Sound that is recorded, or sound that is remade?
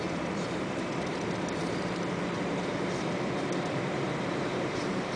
remade